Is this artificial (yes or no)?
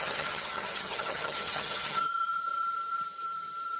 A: yes